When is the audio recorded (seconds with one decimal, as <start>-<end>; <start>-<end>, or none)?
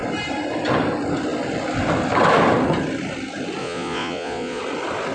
0.0-3.6; 4.6-5.1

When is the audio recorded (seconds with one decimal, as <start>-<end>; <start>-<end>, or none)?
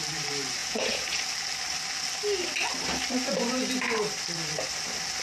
0.0-0.6; 1.2-5.2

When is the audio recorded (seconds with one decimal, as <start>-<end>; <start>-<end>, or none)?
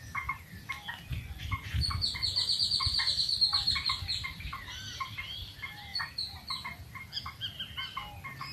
0.0-1.1; 3.2-8.5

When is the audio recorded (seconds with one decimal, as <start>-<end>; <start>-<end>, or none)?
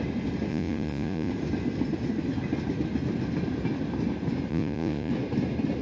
0.0-0.5; 1.3-4.5; 5.1-5.8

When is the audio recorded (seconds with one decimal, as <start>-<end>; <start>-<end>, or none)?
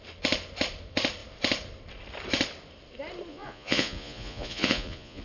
0.0-3.3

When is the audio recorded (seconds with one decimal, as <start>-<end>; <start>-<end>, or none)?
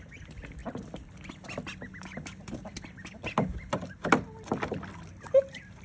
0.0-5.8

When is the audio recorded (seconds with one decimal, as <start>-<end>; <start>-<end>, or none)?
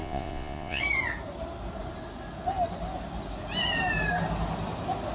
0.8-5.1